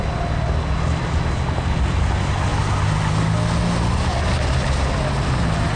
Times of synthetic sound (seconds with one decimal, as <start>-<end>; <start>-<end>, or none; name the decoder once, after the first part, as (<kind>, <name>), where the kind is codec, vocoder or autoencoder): none

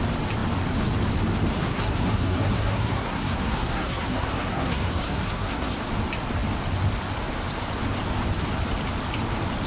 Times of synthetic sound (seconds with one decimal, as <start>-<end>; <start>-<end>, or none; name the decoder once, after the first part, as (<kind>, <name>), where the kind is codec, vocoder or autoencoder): 1.6-5.8 (codec, SNAC)